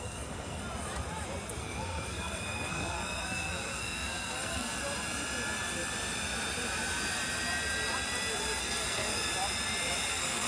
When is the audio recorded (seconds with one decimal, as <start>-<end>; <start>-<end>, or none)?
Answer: 0.6-1.6; 4.8-8.6; 9.3-10.1